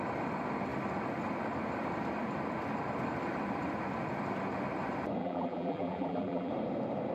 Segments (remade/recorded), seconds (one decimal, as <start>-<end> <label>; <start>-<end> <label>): 0.0-5.2 recorded; 5.2-6.5 remade; 6.5-7.1 recorded